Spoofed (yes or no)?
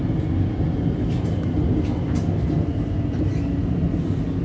no